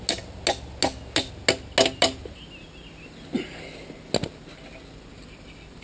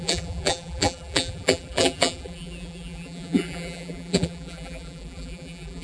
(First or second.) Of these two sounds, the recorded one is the first